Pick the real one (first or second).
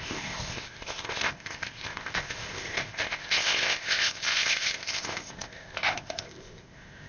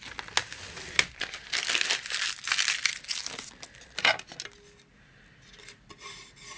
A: second